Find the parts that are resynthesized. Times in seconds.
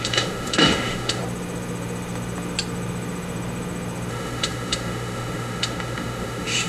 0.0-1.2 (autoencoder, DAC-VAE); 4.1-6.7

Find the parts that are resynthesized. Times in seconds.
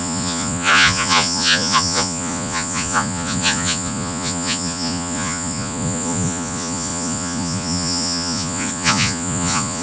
0.0-9.8 (vocoder, Vocos)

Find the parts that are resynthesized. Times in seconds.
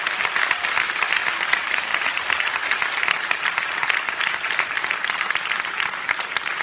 none